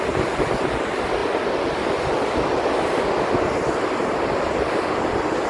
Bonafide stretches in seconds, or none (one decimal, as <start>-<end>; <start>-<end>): 0.0-5.5